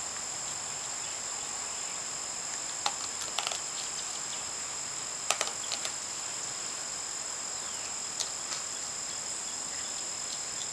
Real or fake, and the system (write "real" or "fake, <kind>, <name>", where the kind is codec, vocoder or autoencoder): real